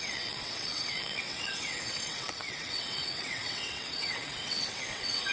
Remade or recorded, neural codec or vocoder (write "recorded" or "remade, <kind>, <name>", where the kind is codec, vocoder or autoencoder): remade, vocoder, WaveNeXt